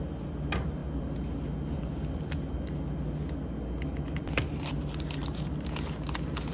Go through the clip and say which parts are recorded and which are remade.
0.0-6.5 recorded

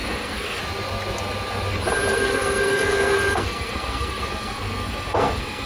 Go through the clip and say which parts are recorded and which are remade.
0.0-0.6 remade; 0.6-2.1 recorded; 2.1-5.7 remade